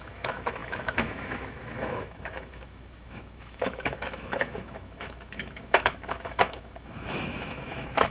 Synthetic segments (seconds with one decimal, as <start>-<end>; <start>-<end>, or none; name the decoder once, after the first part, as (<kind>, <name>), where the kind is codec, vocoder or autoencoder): 0.0-8.1 (autoencoder, DAC-VAE)